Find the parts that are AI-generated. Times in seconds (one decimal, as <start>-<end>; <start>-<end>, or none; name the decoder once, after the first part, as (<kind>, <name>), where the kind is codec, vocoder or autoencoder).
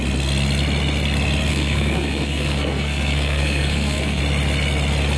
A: 1.5-4.2 (codec, SNAC)